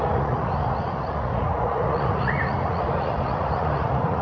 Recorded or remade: remade